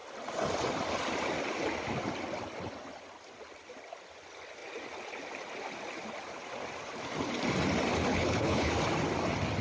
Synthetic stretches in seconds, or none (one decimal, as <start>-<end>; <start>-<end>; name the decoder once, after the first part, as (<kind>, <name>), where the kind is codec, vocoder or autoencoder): 8.1-8.7 (codec, HILCodec)